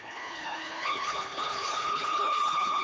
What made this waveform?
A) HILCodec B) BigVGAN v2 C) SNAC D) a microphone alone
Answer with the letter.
A